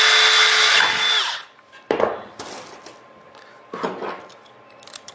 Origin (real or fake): real